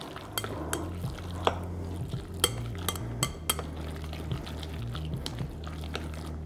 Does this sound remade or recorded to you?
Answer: recorded